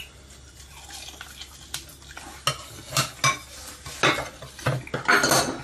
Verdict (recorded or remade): recorded